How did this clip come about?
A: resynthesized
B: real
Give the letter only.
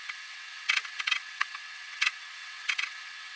A